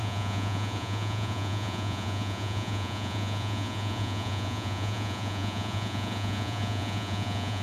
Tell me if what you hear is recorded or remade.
remade